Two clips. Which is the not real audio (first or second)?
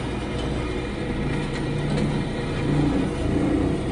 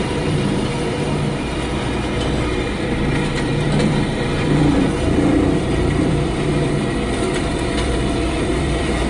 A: second